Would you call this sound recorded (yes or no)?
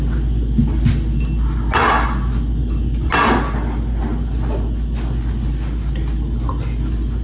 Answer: yes